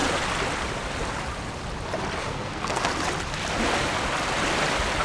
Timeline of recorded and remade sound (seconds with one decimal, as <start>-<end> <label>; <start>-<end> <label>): 0.0-2.2 recorded; 2.2-2.9 remade; 2.9-5.0 recorded